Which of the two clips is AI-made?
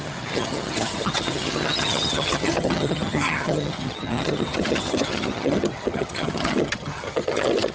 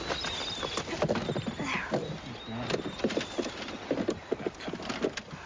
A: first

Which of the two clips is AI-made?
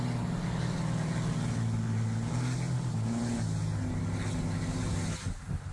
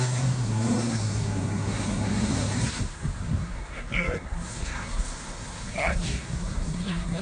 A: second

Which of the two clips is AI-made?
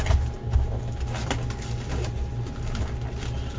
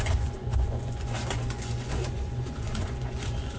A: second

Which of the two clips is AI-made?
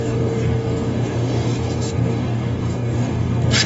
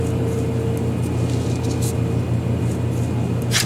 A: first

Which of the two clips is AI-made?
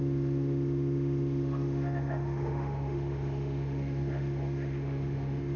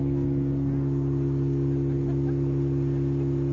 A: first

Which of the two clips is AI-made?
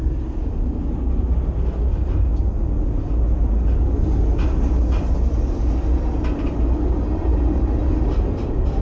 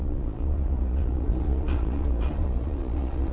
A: second